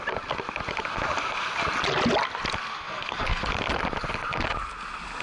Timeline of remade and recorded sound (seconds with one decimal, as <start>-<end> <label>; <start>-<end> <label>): 0.0-2.7 recorded; 2.7-3.4 remade; 3.4-5.2 recorded